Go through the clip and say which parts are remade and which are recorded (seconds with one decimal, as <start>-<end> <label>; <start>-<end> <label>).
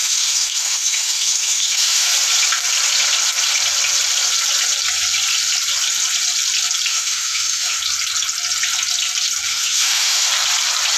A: 0.0-2.1 remade; 2.1-6.9 recorded; 6.9-7.8 remade; 7.8-9.5 recorded; 9.5-10.3 remade; 10.3-11.0 recorded